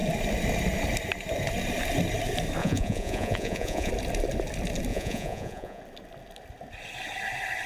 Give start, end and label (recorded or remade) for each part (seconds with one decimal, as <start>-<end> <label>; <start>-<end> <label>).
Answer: 0.0-2.6 recorded; 2.6-3.9 remade; 3.9-4.9 recorded; 4.9-5.8 remade; 5.8-7.7 recorded